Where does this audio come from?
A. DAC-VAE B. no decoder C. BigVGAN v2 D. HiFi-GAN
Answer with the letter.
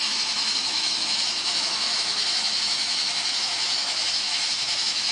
A